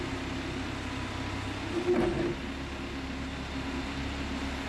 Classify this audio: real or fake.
real